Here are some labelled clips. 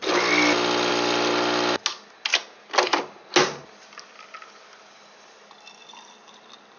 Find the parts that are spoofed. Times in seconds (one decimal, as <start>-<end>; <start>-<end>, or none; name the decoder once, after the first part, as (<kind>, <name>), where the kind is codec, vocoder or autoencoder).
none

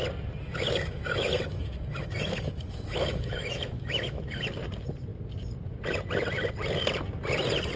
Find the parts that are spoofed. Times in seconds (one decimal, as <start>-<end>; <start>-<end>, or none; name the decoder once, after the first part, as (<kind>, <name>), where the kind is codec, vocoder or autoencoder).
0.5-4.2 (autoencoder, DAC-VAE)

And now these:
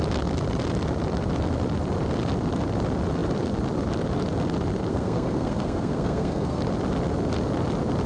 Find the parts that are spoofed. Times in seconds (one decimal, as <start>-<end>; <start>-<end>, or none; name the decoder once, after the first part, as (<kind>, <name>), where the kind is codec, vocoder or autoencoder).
4.9-6.6 (codec, SNAC)

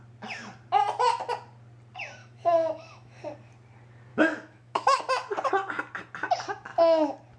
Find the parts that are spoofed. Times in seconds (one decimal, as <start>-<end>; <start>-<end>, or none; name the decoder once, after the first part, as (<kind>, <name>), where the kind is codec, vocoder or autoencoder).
2.2-3.2 (autoencoder, DAC-VAE); 4.1-5.0

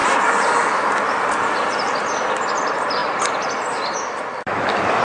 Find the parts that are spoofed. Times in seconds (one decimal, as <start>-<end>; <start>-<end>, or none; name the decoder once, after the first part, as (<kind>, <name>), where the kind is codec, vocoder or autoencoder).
none

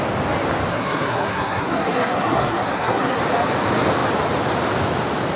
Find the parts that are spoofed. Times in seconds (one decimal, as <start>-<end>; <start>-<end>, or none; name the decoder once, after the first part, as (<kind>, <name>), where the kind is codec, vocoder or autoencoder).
0.7-3.2 (codec, SNAC)

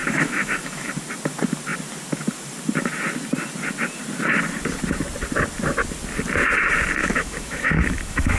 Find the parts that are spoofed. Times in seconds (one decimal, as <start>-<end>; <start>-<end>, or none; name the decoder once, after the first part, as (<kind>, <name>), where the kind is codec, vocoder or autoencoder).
0.0-0.9 (autoencoder, DAC-VAE); 7.0-8.4